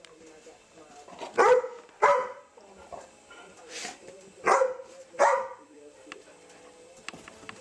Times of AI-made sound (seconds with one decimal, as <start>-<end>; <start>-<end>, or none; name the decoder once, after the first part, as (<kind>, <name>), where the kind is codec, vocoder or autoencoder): 2.2-6.4 (vocoder, BigVGAN v2)